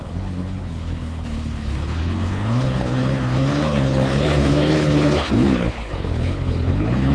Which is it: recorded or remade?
remade